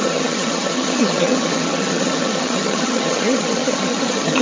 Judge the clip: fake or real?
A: fake